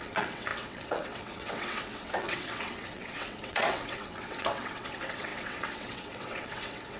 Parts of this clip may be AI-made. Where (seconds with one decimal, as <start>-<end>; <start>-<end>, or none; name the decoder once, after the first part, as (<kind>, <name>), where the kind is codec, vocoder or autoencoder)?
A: 0.0-7.0 (vocoder, WaveNeXt)